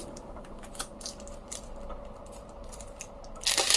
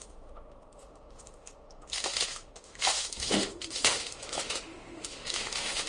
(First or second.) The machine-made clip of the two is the second